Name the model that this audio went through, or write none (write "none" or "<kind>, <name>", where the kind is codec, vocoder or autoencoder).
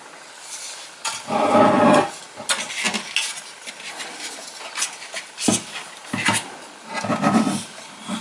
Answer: none